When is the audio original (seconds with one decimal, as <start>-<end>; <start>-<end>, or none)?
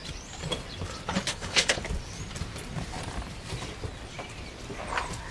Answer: 0.0-1.3; 1.8-5.3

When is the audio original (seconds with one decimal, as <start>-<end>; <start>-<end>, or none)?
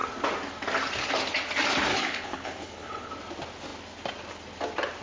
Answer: 0.0-1.9; 3.1-5.0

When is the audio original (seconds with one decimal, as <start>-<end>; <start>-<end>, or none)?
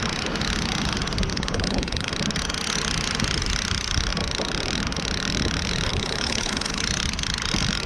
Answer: 0.0-1.3; 2.1-5.9; 6.8-7.9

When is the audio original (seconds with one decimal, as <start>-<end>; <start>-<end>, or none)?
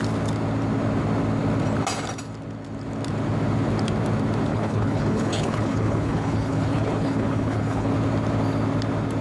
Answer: 0.0-4.5; 7.9-9.2